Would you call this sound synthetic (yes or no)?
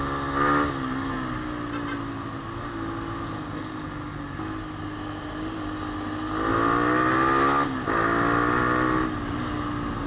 no